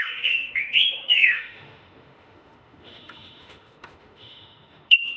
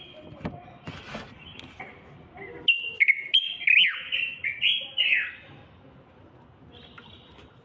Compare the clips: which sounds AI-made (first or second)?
first